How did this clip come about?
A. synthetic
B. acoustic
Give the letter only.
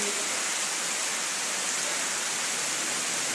B